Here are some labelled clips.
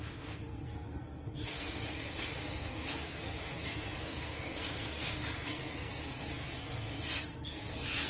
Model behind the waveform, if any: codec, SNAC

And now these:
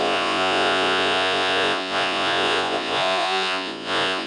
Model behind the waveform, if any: vocoder, Vocos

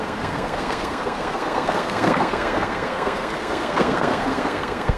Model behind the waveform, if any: codec, SNAC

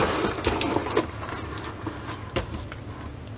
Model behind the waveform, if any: none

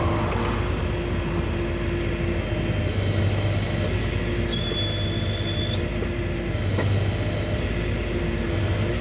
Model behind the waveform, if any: none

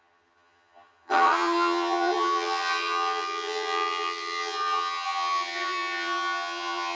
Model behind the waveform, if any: vocoder, HiFi-GAN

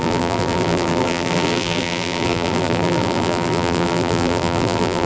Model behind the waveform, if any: vocoder, BigVGAN v2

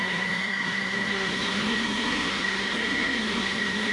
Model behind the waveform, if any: codec, SNAC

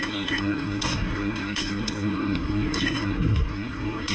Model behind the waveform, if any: codec, SNAC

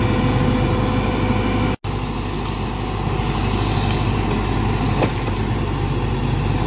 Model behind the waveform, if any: none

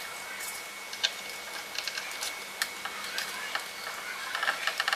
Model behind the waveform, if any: none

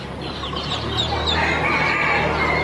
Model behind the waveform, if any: none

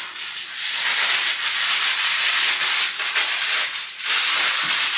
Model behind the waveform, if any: none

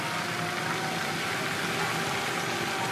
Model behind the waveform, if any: none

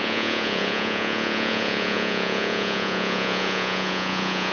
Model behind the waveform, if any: vocoder, Vocos